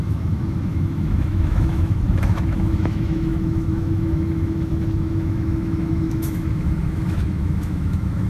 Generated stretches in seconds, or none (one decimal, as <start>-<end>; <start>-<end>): 0.0-8.3